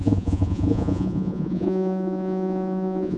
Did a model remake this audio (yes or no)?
yes